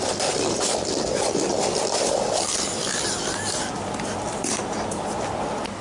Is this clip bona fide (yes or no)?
yes